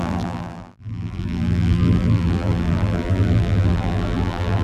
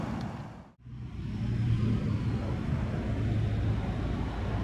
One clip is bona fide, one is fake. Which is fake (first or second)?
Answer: first